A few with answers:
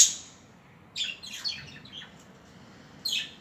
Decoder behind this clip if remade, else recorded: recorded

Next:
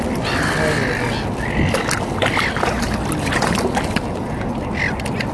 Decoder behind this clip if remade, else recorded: recorded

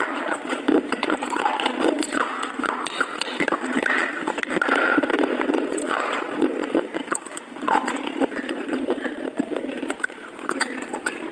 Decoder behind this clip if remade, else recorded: remade, vocoder, Vocos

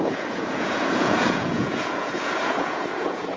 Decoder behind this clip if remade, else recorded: remade, vocoder, Vocos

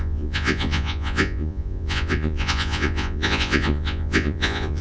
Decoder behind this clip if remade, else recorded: remade, vocoder, Vocos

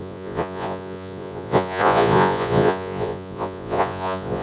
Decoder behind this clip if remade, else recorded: remade, vocoder, Vocos